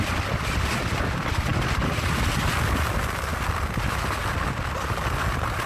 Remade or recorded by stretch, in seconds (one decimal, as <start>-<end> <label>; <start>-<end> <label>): 0.0-5.7 recorded